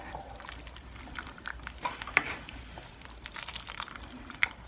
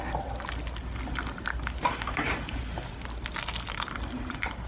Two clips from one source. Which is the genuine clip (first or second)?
second